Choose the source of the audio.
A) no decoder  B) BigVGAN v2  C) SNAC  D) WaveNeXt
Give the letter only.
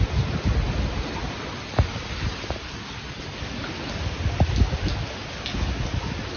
A